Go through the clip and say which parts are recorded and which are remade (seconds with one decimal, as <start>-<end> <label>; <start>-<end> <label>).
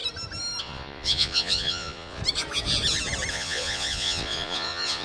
0.0-0.6 recorded; 0.6-2.2 remade; 2.2-3.3 recorded; 3.3-5.0 remade